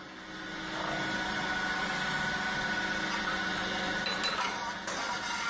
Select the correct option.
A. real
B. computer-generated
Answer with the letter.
A